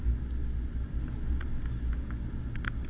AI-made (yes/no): no